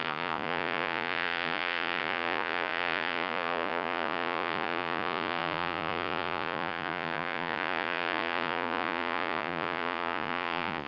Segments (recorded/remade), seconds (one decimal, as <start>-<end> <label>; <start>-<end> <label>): 0.0-10.9 remade